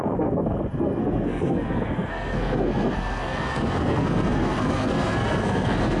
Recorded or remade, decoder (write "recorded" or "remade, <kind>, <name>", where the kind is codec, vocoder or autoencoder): remade, codec, SNAC